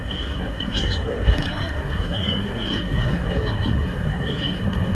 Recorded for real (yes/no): no